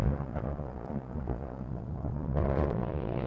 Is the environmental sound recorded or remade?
remade